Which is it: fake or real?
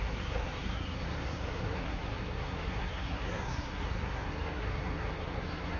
fake